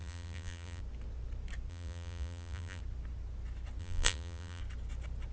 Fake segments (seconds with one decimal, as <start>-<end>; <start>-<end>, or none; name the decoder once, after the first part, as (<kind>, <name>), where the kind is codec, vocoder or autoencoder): 0.0-0.8 (vocoder, BigVGAN v2); 1.7-2.8; 3.8-4.6